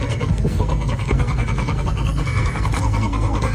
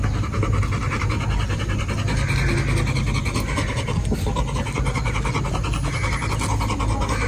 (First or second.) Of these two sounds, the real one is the second